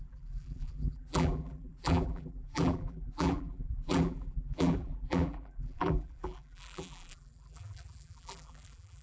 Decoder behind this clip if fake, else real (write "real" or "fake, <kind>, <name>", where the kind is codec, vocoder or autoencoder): fake, vocoder, BigVGAN v2